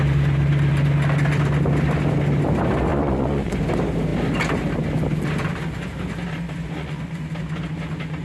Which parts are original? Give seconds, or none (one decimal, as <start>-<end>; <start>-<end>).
0.0-2.9; 3.6-6.6; 7.3-8.2